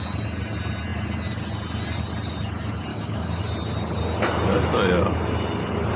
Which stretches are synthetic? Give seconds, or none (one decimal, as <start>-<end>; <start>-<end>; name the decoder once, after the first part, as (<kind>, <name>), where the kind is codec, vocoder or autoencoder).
2.9-3.4 (codec, DAC)